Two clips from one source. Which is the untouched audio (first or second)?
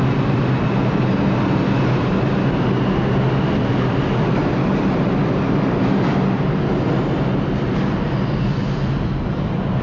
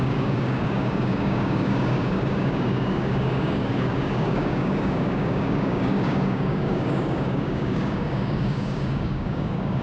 first